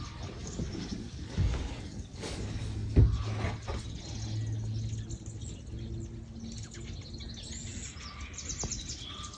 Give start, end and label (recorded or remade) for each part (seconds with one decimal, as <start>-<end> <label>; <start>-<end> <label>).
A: 0.0-0.4 recorded; 0.4-3.0 remade; 3.0-9.4 recorded